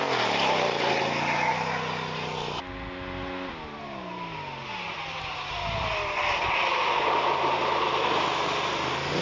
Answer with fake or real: real